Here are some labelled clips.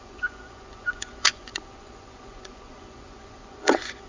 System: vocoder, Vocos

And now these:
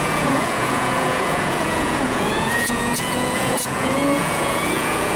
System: vocoder, Vocos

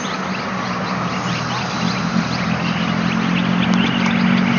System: none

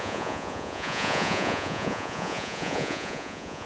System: vocoder, Vocos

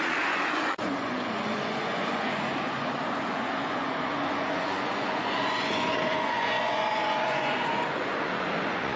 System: vocoder, Vocos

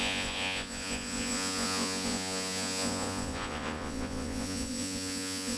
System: vocoder, Vocos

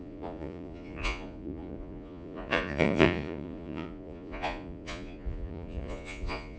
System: vocoder, Vocos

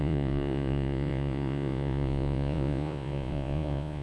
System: vocoder, Vocos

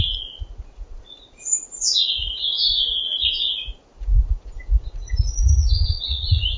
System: vocoder, Vocos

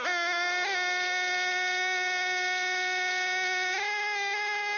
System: none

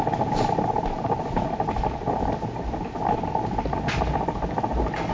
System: none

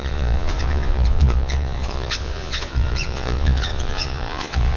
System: vocoder, Vocos